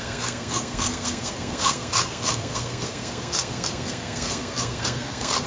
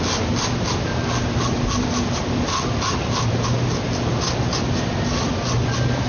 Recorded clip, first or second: second